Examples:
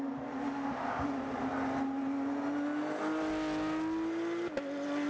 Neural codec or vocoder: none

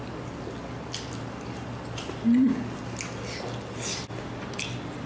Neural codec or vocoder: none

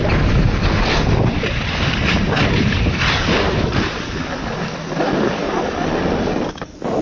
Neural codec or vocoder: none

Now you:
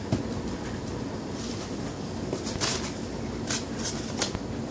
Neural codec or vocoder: none